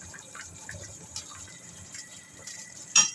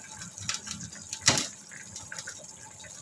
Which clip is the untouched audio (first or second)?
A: second